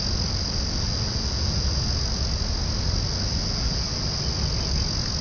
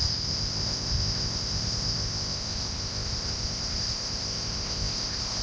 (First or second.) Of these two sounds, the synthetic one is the second